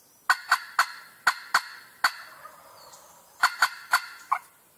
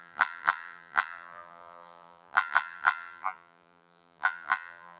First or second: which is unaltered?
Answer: first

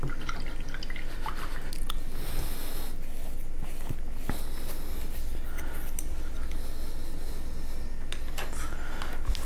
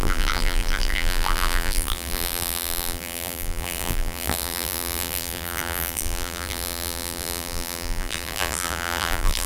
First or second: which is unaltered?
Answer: first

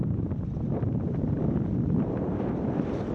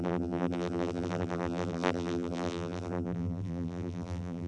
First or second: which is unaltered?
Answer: first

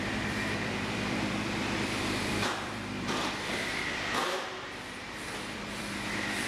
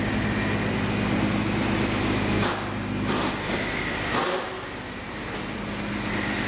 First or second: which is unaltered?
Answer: second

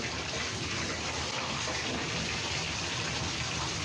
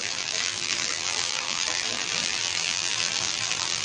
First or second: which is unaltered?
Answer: first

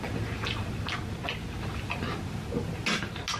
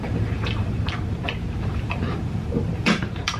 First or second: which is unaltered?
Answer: first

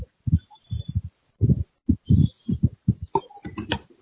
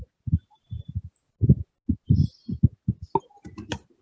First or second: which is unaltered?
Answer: second